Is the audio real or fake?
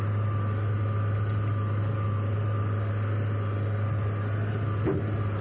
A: real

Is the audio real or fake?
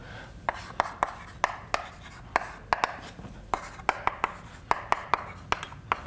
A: real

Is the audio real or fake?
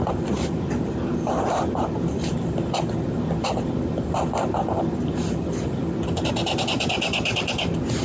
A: real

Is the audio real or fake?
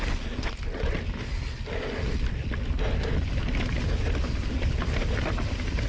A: real